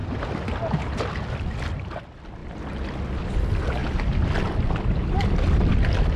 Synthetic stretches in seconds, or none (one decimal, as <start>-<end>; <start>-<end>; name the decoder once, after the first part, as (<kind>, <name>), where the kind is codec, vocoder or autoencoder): none